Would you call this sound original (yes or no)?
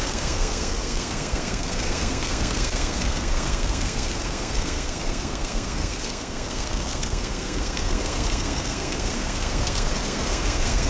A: no